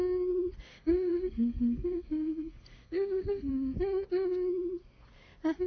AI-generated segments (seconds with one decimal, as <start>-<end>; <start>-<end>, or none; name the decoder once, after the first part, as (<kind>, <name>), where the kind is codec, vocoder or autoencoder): 0.7-3.5 (codec, SNAC)